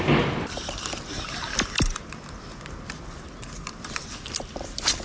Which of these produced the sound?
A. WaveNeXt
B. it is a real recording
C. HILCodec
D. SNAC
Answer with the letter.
B